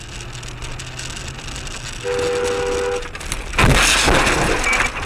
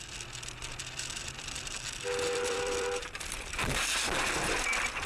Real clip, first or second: first